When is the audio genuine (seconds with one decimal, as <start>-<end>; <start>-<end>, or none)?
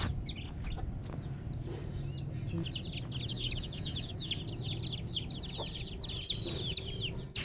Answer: 0.0-3.3; 4.4-7.4